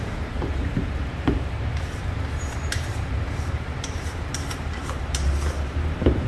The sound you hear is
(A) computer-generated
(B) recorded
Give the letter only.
A